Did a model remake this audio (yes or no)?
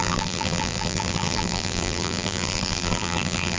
yes